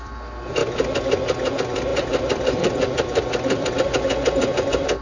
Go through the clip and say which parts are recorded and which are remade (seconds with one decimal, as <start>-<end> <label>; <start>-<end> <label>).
0.0-1.9 recorded; 1.9-3.7 remade; 3.7-5.0 recorded